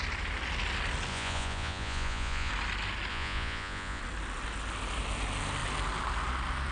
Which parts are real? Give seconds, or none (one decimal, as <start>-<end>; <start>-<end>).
0.0-1.1; 2.5-3.1; 4.0-6.7